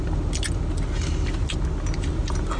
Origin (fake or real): real